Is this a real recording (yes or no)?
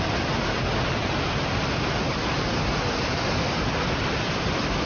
no